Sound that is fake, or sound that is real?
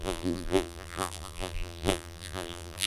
fake